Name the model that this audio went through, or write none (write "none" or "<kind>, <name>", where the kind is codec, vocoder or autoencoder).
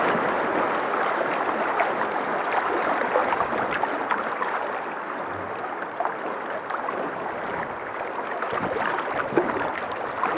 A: none